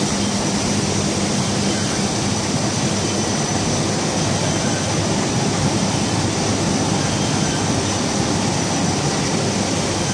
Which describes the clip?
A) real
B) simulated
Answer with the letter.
A